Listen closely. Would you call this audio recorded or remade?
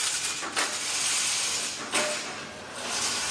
recorded